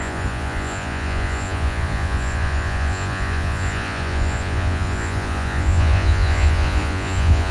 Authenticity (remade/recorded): remade